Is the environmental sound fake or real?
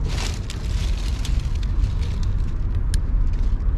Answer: real